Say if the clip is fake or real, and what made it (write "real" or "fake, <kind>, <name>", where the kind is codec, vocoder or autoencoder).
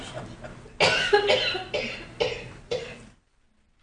real